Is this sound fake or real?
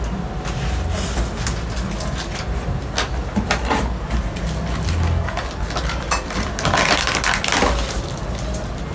real